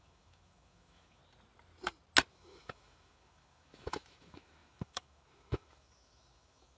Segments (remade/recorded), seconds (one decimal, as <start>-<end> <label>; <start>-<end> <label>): 0.0-1.2 remade; 1.2-2.3 recorded; 2.3-6.8 remade